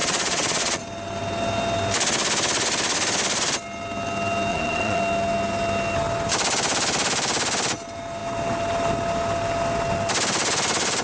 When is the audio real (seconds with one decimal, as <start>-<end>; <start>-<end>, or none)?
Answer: 0.8-4.5; 5.0-11.0